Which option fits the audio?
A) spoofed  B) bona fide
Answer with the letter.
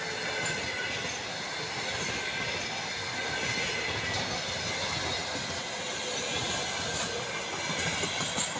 B